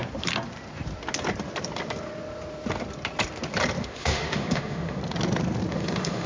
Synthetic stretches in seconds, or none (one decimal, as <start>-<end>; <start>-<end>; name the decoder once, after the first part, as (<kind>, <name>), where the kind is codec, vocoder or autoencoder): 3.8-5.0 (autoencoder, DAC-VAE); 5.7-6.3